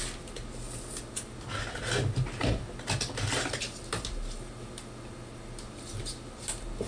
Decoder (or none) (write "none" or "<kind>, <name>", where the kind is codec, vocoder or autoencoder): none